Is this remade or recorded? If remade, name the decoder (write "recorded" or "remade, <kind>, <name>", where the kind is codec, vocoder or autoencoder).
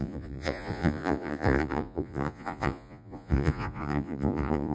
remade, vocoder, Vocos